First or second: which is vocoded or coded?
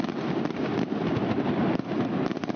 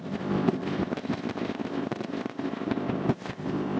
second